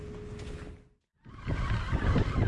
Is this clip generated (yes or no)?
no